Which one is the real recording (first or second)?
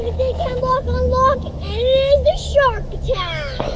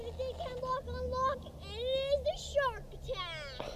second